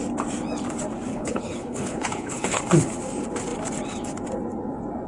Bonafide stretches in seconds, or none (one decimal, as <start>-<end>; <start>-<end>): 0.0-1.1; 2.6-5.1